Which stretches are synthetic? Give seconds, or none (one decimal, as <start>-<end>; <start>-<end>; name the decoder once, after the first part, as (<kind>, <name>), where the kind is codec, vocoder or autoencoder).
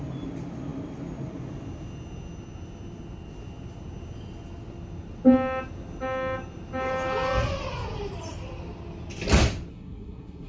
9.7-10.5 (codec, SNAC)